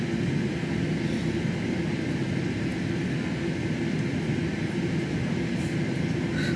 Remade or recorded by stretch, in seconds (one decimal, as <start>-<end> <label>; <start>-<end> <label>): 0.0-6.6 recorded